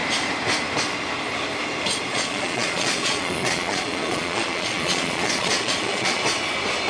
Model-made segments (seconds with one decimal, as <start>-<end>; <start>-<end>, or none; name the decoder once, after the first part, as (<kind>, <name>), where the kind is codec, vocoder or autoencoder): 2.1-6.2 (vocoder, Vocos)